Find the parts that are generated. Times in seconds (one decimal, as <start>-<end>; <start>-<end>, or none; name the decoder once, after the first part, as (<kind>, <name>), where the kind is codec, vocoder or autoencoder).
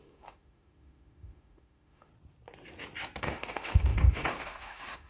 0.0-2.1 (autoencoder, DAC-VAE); 3.2-5.1